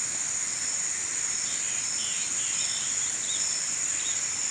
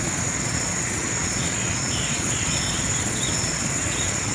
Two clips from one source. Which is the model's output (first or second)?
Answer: second